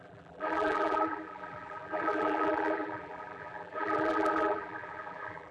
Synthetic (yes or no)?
yes